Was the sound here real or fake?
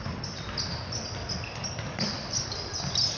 real